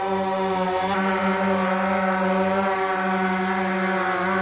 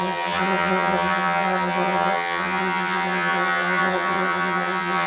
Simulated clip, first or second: second